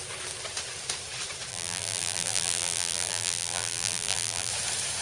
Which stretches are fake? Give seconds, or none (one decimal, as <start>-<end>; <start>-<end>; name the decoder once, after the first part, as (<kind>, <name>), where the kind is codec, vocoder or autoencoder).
1.5-4.5 (vocoder, BigVGAN v2)